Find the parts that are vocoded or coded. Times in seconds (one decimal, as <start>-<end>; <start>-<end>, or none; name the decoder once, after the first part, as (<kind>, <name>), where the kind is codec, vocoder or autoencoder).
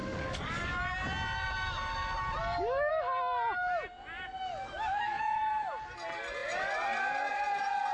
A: 0.0-0.7 (codec, DAC); 2.4-2.9; 4.6-5.4